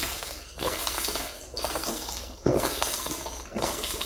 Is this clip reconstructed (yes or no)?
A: yes